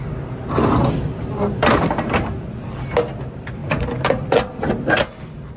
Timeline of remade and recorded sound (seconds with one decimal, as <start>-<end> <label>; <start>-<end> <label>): 0.0-0.8 recorded; 0.8-1.7 remade; 1.7-3.6 recorded; 3.6-5.0 remade; 5.0-5.6 recorded